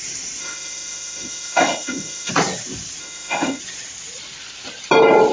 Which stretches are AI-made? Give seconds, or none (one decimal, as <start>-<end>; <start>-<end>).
0.4-2.3; 3.0-3.6